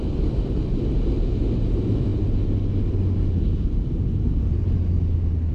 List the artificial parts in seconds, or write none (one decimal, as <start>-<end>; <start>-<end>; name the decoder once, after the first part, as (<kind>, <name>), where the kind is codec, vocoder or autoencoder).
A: none